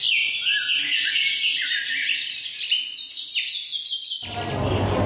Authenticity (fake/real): real